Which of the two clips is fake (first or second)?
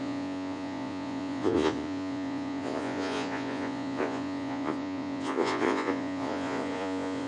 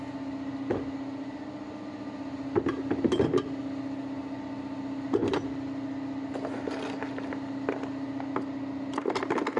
first